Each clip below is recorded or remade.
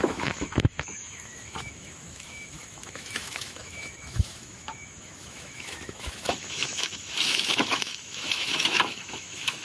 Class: remade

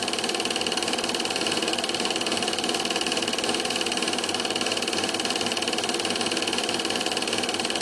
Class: remade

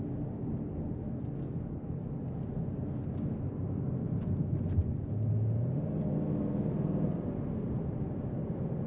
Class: recorded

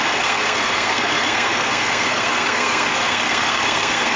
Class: remade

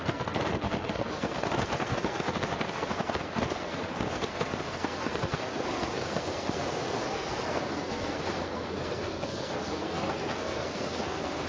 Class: remade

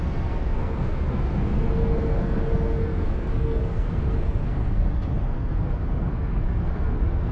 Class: remade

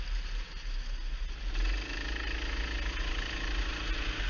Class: recorded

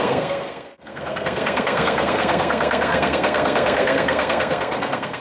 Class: remade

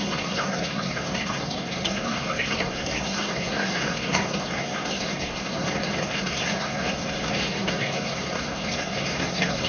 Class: remade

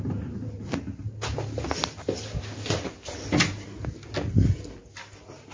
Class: recorded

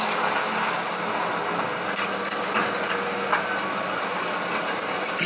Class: recorded